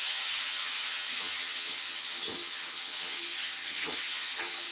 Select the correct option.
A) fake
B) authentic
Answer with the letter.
A